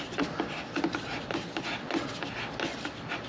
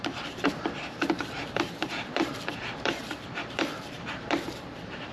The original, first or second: first